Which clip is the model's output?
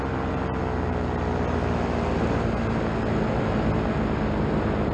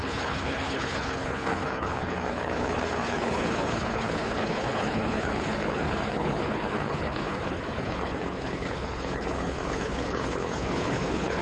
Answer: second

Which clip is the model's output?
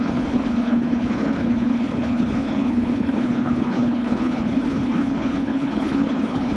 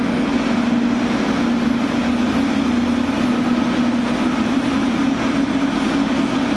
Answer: first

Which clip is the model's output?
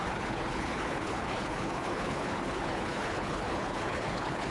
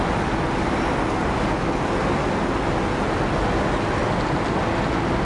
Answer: first